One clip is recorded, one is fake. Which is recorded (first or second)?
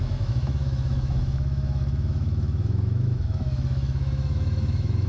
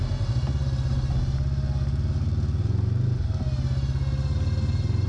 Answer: second